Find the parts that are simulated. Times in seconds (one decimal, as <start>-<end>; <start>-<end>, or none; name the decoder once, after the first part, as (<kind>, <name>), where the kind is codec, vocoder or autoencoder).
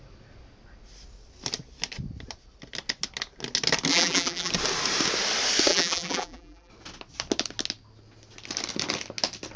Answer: 3.9-4.5 (vocoder, BigVGAN v2); 5.7-6.7